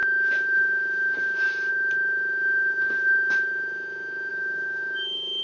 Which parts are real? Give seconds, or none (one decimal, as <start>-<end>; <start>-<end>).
0.0-4.3